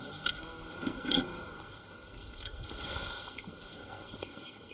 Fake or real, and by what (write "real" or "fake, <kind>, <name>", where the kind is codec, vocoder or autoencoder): fake, codec, SNAC